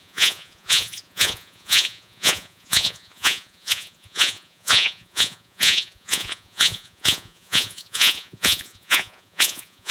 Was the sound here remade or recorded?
remade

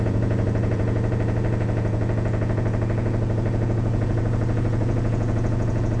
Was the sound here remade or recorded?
remade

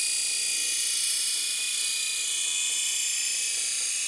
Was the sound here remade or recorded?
recorded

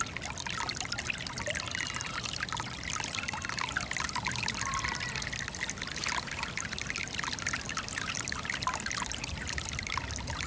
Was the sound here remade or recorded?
recorded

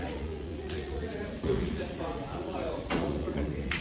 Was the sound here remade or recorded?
remade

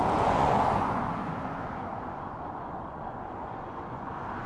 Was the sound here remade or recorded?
remade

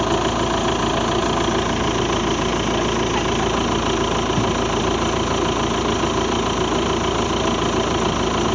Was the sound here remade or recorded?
recorded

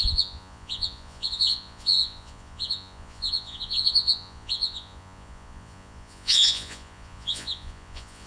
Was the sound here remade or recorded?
remade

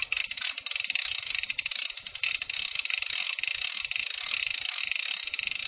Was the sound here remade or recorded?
recorded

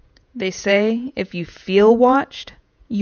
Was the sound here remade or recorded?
remade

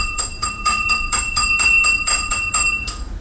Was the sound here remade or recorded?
remade